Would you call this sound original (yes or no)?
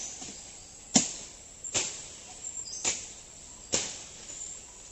yes